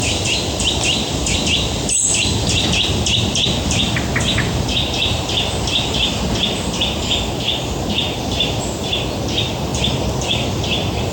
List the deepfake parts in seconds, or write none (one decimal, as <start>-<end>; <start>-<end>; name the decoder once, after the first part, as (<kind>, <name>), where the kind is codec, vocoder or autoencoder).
none